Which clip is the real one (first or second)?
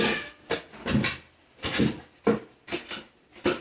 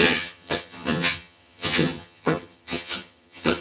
first